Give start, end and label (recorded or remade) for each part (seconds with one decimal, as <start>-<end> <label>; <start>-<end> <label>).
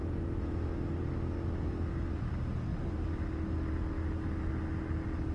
0.0-5.3 recorded